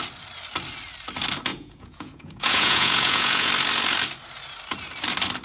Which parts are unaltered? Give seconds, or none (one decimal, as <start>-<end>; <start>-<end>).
0.0-1.5; 3.5-5.4